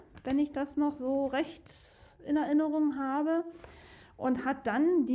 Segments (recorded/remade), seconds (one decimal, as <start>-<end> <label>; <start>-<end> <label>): 0.0-2.0 recorded; 2.0-3.8 remade; 3.8-5.1 recorded